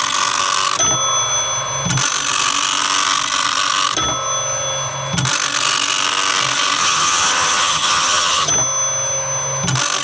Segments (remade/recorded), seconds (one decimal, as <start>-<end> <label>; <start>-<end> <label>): 0.0-6.8 recorded; 6.8-8.5 remade; 8.5-10.0 recorded